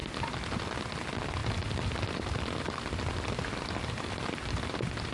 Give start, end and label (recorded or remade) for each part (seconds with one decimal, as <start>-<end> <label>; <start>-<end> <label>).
0.0-5.1 recorded